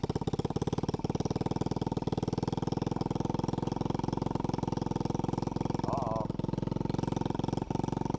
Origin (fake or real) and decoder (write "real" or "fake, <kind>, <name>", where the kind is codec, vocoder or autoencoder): real